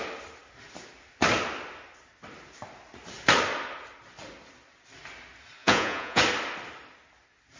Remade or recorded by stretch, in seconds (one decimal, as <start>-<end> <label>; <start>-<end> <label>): 0.0-5.6 recorded; 5.6-6.2 remade; 6.2-7.6 recorded